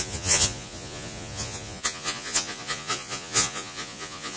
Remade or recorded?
remade